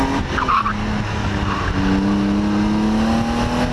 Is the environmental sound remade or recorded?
recorded